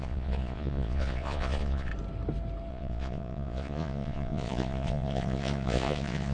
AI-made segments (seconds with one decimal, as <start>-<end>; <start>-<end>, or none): 0.0-1.9; 2.7-6.3